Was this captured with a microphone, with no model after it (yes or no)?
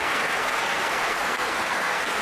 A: no